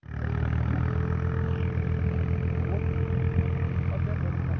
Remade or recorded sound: recorded